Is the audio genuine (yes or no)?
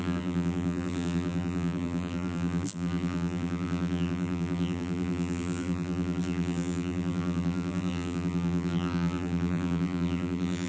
no